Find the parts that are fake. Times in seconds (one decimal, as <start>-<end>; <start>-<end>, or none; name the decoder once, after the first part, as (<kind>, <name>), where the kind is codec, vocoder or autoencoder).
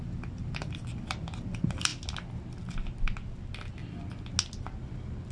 0.0-1.9 (vocoder, BigVGAN v2)